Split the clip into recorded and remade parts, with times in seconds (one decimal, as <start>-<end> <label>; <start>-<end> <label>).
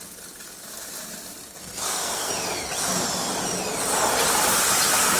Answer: 0.0-1.6 recorded; 1.6-2.3 remade; 2.3-5.2 recorded